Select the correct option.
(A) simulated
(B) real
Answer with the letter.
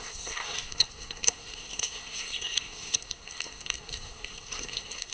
A